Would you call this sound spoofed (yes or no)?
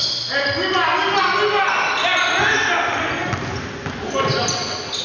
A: no